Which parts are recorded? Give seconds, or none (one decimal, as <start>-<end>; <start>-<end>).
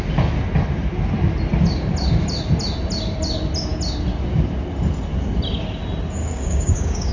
0.0-6.2